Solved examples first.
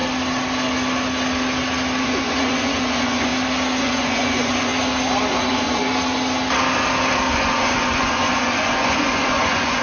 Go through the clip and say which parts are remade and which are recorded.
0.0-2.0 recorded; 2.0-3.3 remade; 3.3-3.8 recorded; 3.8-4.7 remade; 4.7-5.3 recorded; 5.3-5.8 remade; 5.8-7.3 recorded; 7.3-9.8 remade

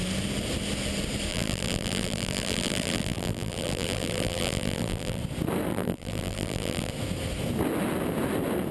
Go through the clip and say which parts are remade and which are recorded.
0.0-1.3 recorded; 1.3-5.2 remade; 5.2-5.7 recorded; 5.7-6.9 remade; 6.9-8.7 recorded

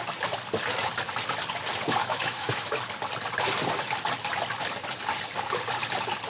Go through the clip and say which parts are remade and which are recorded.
0.0-2.0 recorded; 2.0-2.8 remade; 2.8-6.3 recorded

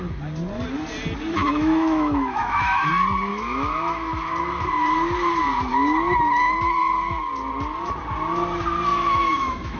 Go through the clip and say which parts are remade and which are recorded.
0.0-1.4 recorded; 1.4-2.9 remade; 2.9-3.3 recorded; 3.3-4.2 remade; 4.2-8.9 recorded; 8.9-9.8 remade

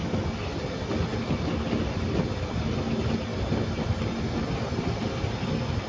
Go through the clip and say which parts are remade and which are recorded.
0.0-5.9 recorded